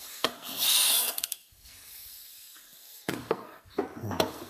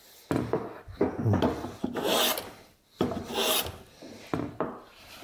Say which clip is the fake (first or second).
first